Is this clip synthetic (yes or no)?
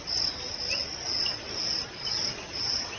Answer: no